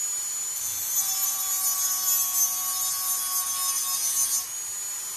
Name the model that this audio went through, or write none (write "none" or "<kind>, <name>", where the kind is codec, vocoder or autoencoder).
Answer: none